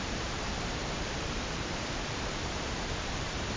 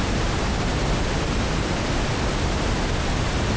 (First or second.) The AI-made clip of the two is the first